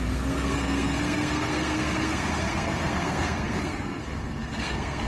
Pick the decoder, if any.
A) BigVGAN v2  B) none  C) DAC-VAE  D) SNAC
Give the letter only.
D